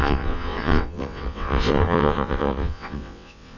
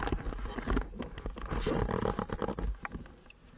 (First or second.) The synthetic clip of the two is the first